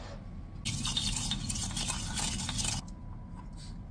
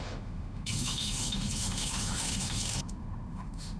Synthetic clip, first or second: second